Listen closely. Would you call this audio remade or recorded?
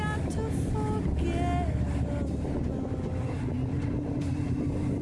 recorded